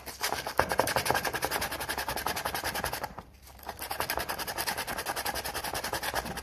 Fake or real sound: real